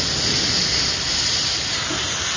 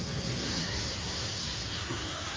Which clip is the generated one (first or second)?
second